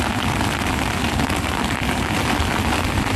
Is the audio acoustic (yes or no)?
yes